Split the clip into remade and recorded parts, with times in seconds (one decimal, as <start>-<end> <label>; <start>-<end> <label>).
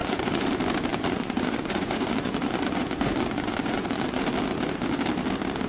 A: 0.0-0.5 remade; 0.5-0.9 recorded; 0.9-4.2 remade; 4.2-5.7 recorded